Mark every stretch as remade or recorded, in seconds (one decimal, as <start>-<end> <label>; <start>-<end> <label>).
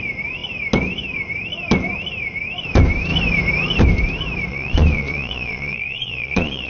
0.0-4.5 recorded; 4.5-6.7 remade